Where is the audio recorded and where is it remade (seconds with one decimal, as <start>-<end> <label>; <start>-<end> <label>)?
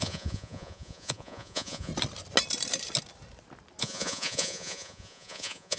0.0-1.9 remade; 1.9-3.8 recorded; 3.8-5.8 remade